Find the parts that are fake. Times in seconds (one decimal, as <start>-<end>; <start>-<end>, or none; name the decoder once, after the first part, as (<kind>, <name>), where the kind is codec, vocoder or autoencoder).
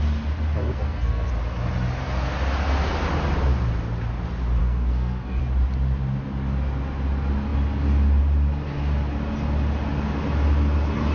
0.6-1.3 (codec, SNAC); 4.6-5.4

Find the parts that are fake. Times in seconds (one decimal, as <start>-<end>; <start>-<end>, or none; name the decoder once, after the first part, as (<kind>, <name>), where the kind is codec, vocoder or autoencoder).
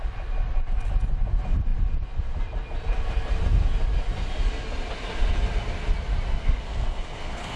6.4-7.6 (codec, SNAC)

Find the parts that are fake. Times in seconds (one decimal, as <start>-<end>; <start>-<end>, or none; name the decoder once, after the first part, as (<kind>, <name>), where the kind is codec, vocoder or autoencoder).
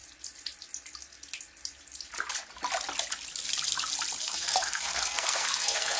4.2-6.0 (codec, SNAC)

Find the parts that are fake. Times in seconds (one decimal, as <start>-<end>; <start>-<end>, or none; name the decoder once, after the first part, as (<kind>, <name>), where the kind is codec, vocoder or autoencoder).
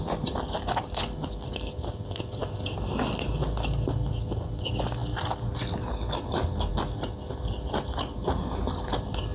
none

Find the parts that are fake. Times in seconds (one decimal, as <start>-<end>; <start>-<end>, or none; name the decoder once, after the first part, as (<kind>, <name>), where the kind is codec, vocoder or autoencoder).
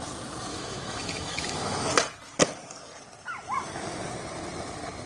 0.5-1.9 (autoencoder, DAC-VAE)